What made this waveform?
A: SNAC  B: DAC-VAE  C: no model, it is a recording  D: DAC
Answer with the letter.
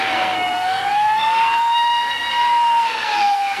A